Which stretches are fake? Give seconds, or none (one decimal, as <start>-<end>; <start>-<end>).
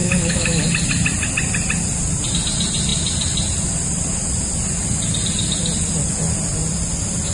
0.0-0.6